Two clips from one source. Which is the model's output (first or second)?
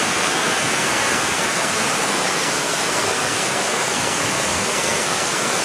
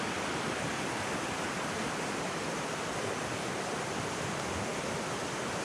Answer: first